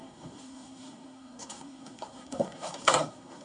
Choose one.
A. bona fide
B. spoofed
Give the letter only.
B